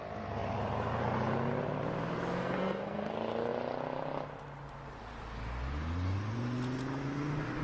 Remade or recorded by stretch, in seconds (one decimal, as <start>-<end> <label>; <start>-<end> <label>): 0.0-2.4 recorded; 2.4-3.1 remade; 3.1-7.6 recorded